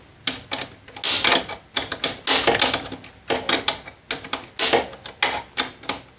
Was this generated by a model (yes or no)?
no